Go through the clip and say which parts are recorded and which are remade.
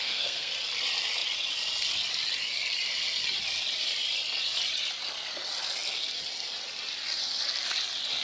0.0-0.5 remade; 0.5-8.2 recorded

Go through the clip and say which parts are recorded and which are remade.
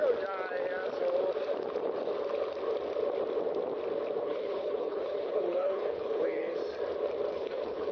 0.0-4.2 recorded; 4.2-6.6 remade; 6.6-7.3 recorded; 7.3-7.9 remade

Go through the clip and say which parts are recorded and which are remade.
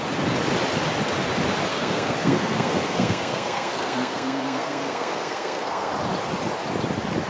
0.0-1.7 recorded; 1.7-5.9 remade; 5.9-7.3 recorded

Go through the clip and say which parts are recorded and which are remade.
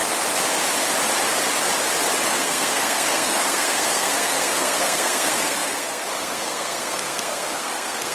0.0-2.3 recorded; 2.3-8.1 remade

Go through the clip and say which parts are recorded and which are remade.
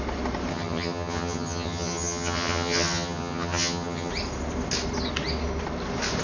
0.0-0.5 recorded; 0.5-4.1 remade; 4.1-6.2 recorded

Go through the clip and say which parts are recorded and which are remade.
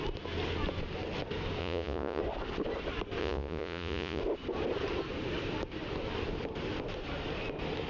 0.0-1.6 recorded; 1.6-2.2 remade; 2.2-3.2 recorded; 3.2-4.2 remade; 4.2-7.9 recorded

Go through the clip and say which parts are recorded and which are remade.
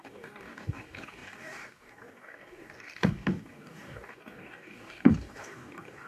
0.0-6.1 remade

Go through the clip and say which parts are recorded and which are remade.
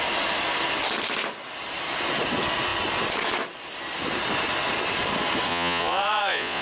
0.0-5.5 recorded; 5.5-6.6 remade